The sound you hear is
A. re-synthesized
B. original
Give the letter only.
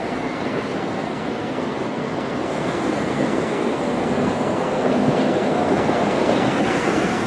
A